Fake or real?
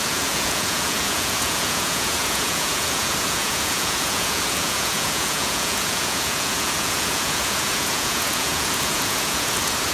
fake